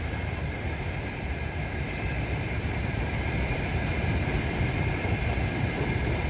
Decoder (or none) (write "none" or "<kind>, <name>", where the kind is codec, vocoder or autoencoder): vocoder, BigVGAN v2